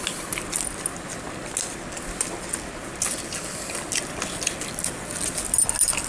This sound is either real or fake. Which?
real